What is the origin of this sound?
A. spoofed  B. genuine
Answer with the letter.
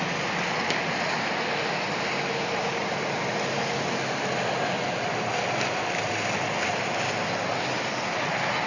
B